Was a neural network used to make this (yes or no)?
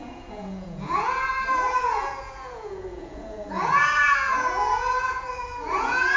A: yes